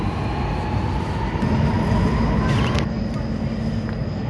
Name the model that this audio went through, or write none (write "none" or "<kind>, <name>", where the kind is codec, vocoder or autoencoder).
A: none